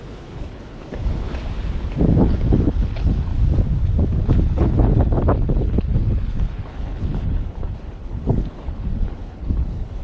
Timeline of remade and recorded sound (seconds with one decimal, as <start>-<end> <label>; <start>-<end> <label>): 0.0-1.3 remade; 1.3-2.2 recorded; 2.2-3.3 remade; 3.3-4.2 recorded; 4.2-10.0 remade